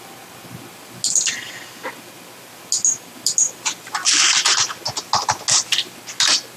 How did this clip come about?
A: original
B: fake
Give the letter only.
A